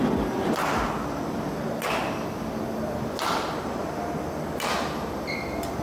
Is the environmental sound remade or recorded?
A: recorded